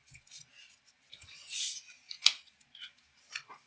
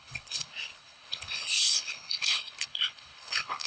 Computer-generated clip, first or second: second